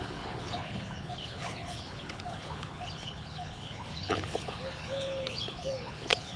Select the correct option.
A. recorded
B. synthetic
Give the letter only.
B